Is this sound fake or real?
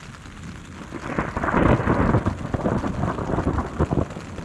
real